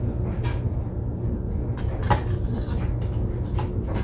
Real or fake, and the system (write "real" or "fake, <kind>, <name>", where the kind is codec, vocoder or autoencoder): real